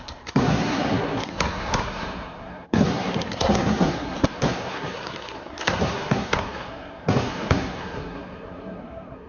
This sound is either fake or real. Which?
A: fake